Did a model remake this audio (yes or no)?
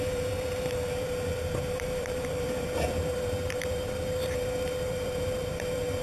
yes